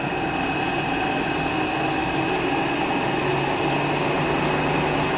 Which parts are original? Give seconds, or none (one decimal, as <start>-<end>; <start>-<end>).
0.0-5.2